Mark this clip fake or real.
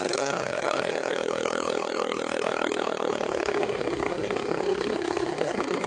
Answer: fake